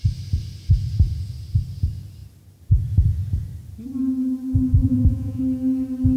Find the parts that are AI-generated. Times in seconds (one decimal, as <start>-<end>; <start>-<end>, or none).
4.8-5.4